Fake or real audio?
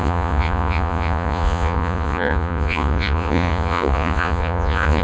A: fake